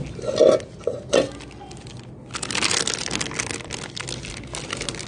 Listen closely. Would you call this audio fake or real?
real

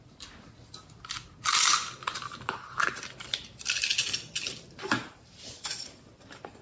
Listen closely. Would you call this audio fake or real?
real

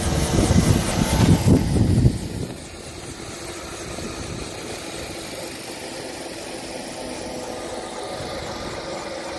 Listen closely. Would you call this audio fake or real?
real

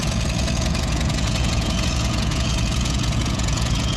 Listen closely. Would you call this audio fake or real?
fake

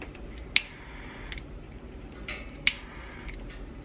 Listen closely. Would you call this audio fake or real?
real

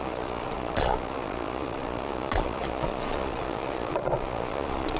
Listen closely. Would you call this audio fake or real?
fake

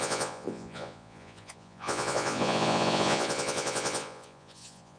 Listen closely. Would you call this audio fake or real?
fake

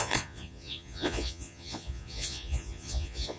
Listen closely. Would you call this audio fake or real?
fake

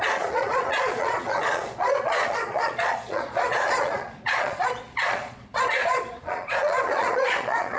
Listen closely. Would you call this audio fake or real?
fake